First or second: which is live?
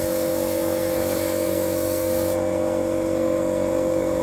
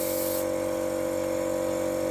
second